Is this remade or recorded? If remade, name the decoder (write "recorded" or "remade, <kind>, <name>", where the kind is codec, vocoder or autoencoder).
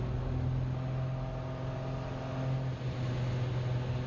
recorded